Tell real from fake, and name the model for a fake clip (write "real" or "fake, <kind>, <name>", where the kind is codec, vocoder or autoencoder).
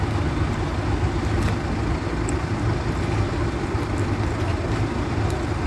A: real